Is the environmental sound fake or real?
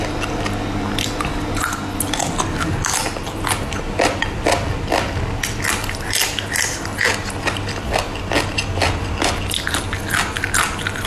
real